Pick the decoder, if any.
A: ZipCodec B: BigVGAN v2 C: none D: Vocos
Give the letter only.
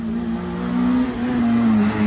C